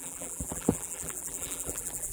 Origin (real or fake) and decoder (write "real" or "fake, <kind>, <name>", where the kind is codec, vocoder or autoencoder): fake, vocoder, BigVGAN v2